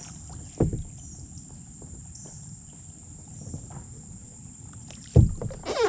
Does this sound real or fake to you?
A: real